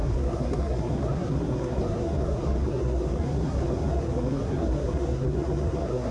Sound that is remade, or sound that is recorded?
remade